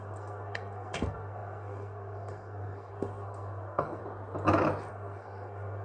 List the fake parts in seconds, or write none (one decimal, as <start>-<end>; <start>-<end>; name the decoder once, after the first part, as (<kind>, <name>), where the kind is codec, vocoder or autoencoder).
0.0-4.0 (codec, SNAC); 4.9-5.8